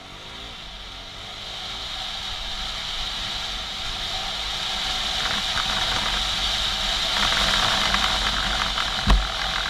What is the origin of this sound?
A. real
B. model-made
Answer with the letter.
A